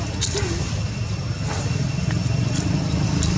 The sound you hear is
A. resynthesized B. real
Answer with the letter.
B